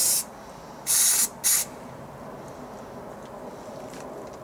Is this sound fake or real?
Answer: real